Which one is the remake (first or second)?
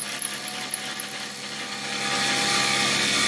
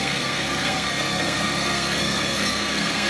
second